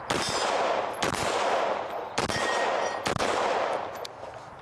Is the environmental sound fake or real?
real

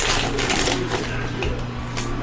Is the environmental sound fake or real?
real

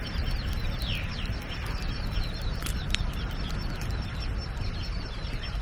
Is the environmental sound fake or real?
real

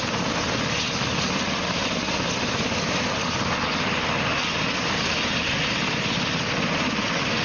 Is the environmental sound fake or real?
real